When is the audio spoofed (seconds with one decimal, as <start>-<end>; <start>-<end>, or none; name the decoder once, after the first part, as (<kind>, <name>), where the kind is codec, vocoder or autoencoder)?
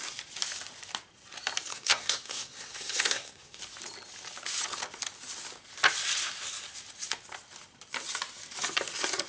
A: 1.7-3.6 (codec, SNAC)